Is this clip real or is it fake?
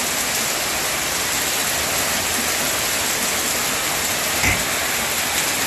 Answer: real